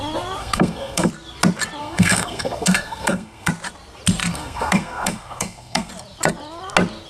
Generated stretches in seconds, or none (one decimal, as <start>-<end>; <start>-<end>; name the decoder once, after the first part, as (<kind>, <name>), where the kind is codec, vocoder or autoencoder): 0.4-1.1 (codec, SNAC); 1.8-3.5; 4.3-5.9